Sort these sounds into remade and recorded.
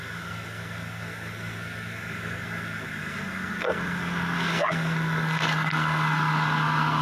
remade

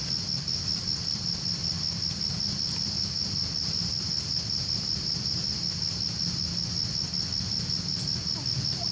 recorded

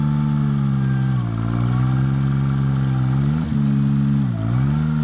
recorded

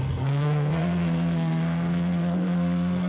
remade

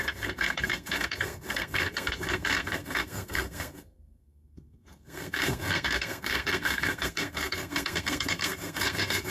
remade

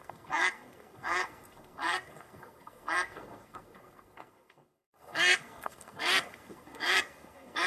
remade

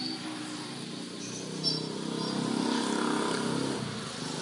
recorded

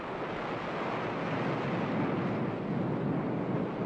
recorded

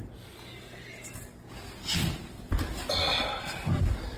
recorded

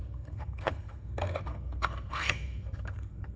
remade